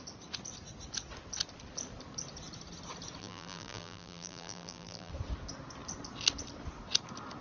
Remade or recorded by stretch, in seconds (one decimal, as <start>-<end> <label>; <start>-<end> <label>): 0.0-3.2 recorded; 3.2-5.1 remade; 5.1-7.4 recorded